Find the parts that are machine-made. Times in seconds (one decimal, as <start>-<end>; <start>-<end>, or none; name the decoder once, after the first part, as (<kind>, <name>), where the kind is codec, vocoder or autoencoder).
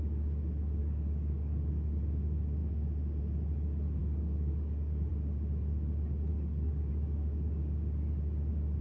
0.8-1.7 (codec, DAC); 4.0-5.1; 6.3-6.9